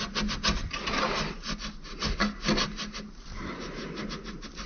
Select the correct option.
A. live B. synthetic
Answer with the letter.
A